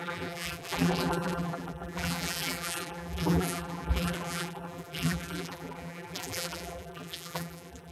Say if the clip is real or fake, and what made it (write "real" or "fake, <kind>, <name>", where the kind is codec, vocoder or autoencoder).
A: fake, vocoder, BigVGAN v2